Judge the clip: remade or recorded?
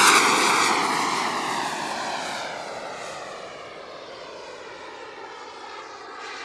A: recorded